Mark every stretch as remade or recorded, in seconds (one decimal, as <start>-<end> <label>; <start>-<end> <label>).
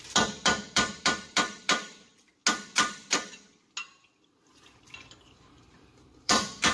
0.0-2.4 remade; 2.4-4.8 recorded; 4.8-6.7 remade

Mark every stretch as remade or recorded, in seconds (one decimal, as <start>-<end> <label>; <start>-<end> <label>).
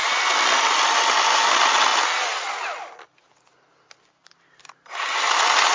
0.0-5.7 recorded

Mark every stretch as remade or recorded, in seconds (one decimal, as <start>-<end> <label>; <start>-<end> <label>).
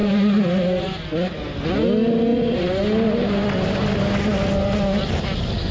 0.0-5.7 recorded